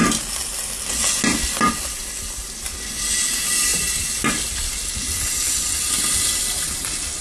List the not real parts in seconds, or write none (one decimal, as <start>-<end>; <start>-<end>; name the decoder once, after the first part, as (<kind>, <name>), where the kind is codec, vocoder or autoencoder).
none